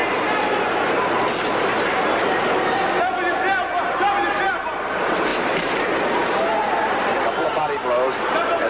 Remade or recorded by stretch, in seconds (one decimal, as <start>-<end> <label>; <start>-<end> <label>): 0.0-8.7 recorded